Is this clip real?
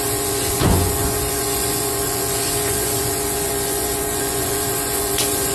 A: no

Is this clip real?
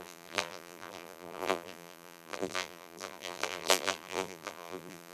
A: no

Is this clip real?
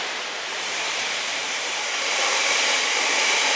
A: no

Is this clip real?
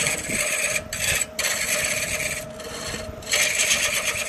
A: yes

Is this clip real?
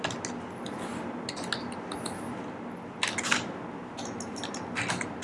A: yes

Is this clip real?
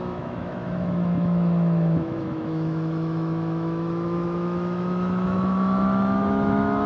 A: no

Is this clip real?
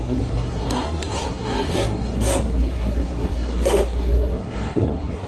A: no